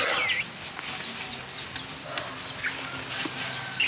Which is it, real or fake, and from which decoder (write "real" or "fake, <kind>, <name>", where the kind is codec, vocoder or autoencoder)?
real